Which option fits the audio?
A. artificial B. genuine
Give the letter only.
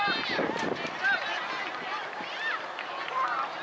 B